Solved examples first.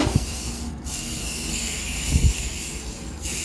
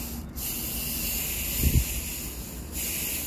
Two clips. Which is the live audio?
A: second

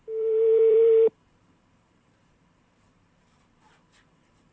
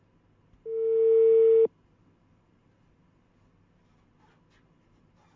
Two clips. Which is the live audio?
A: second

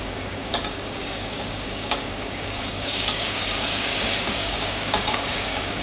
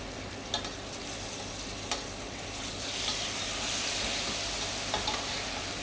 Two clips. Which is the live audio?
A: second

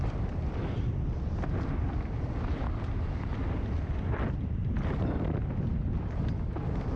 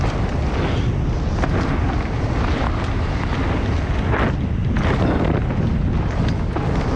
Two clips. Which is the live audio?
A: second